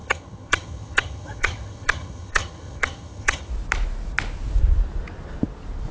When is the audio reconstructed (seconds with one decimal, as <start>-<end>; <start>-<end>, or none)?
0.0-3.5